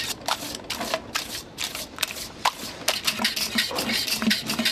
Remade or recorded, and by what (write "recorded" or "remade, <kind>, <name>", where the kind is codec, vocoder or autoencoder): remade, vocoder, BigVGAN v2